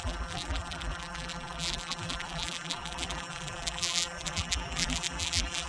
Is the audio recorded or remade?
remade